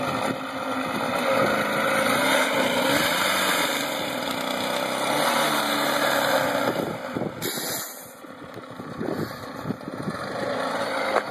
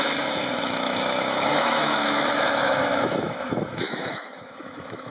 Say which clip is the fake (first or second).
second